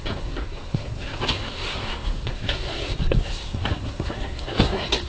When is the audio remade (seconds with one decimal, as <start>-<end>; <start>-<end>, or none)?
0.0-5.1